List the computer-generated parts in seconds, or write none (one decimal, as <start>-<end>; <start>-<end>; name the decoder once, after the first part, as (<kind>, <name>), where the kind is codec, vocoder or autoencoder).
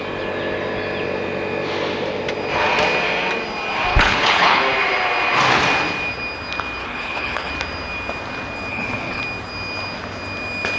3.9-4.6 (codec, HILCodec); 6.8-7.5; 8.7-9.2